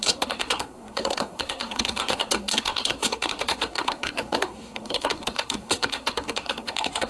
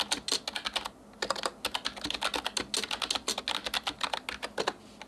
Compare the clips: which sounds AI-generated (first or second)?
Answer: first